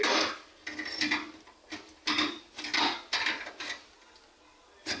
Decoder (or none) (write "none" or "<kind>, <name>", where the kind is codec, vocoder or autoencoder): none